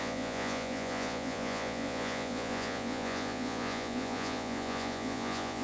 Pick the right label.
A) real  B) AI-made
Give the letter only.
B